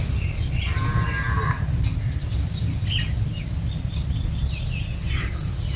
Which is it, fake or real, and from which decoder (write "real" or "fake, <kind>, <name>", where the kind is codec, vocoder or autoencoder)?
real